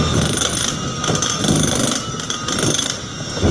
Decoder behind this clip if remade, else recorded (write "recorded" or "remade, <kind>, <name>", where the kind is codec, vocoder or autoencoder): recorded